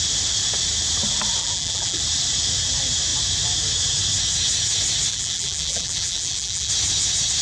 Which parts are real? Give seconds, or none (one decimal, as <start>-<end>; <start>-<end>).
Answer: 0.0-1.4; 2.0-5.1; 6.7-7.4